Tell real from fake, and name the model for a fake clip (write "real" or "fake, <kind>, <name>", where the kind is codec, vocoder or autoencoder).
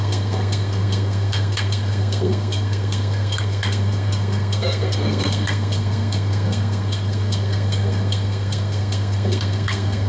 fake, codec, SNAC